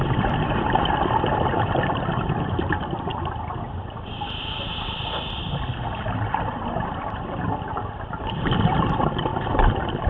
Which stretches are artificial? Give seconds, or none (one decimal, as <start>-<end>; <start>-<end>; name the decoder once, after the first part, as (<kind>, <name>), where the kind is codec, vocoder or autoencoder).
3.1-8.3 (vocoder, BigVGAN v2); 9.3-10.1